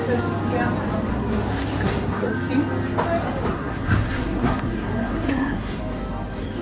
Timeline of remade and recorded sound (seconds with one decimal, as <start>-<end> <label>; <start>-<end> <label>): 0.0-1.1 recorded; 1.1-2.3 remade; 2.3-3.5 recorded; 3.5-5.8 remade; 5.8-6.6 recorded